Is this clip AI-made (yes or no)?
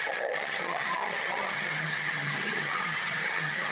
yes